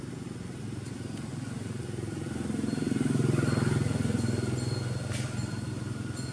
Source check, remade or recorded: recorded